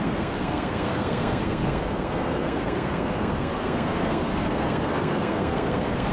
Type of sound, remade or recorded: remade